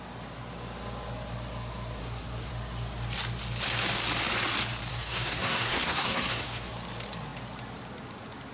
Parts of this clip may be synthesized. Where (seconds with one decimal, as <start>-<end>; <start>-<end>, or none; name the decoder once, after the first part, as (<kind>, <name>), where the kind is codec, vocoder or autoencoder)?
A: 2.0-2.5 (codec, SNAC); 4.9-6.7